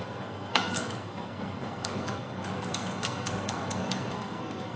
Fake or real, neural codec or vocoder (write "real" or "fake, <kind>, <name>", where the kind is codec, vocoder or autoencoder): fake, codec, SNAC